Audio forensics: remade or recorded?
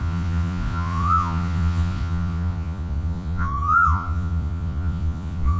remade